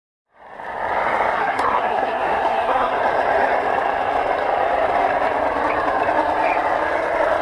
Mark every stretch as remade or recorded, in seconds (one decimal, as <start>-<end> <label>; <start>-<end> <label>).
0.0-1.4 recorded; 1.4-2.9 remade; 2.9-7.4 recorded

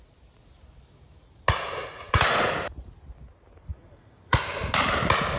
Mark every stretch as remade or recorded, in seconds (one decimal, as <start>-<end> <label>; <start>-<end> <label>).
0.0-1.8 recorded; 1.8-2.5 remade; 2.5-3.7 recorded; 3.7-4.4 remade; 4.4-5.4 recorded

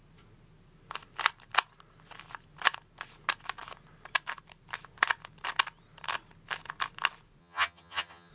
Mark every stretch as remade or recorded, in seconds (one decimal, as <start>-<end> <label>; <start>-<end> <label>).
0.0-7.4 recorded; 7.4-8.3 remade

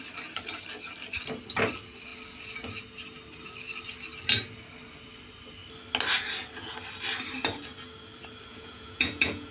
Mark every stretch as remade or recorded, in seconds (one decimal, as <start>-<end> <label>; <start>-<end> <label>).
0.0-8.5 recorded; 8.5-9.5 remade

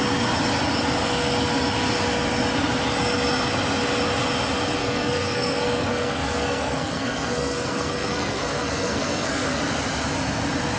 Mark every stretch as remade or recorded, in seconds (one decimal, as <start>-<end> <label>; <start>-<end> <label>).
0.0-4.8 recorded; 4.8-9.6 remade; 9.6-10.8 recorded

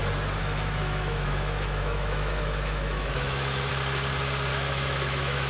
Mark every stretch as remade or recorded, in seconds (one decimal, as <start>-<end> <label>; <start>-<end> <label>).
0.0-0.4 recorded; 0.4-3.7 remade; 3.7-4.5 recorded; 4.5-5.5 remade